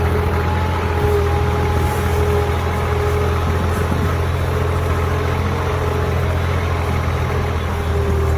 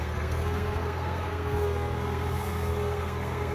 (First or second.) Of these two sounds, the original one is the first